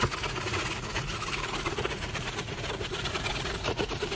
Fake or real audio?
fake